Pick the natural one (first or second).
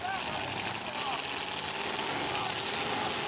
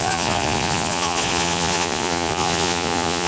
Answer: first